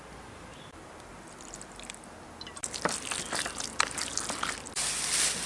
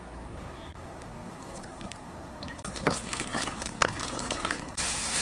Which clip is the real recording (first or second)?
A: first